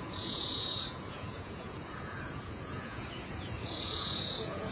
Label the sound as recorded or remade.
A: remade